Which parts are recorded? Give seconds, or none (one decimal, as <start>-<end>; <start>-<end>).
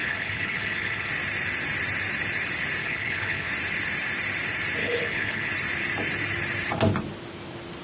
1.1-2.8; 3.5-4.8; 5.5-7.8